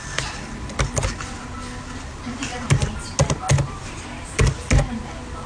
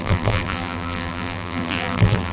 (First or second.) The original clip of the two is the first